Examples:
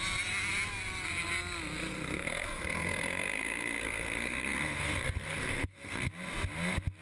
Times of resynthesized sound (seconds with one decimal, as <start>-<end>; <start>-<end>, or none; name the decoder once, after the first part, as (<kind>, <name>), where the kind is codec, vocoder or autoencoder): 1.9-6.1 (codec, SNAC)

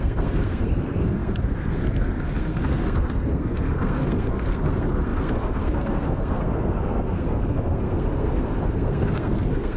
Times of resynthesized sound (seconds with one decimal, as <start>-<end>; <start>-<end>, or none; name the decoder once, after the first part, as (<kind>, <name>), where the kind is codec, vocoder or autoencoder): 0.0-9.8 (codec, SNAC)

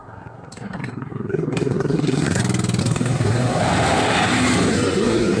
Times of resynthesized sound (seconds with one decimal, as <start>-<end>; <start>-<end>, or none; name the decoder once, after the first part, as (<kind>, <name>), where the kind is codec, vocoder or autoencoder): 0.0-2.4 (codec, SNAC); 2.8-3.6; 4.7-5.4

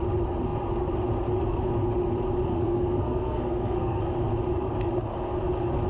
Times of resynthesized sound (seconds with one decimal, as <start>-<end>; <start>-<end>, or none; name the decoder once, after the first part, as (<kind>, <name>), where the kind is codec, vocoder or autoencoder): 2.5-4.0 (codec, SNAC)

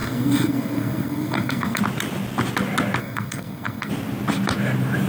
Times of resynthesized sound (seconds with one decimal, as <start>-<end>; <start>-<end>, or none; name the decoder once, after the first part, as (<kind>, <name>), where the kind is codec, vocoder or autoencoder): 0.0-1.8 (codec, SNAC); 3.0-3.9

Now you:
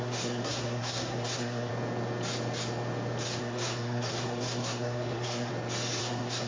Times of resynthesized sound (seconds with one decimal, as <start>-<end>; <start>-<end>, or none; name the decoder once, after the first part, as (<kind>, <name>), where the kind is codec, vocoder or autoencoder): 0.0-1.7 (codec, SNAC); 3.4-5.5; 6.0-6.5